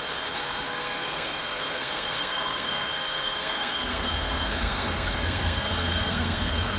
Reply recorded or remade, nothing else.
remade